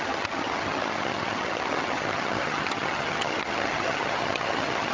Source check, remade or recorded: remade